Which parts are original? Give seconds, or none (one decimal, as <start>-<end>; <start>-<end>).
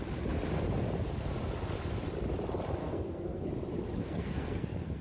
0.0-2.8; 3.5-4.0